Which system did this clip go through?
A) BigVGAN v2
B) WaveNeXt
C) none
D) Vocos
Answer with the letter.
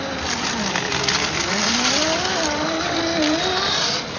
C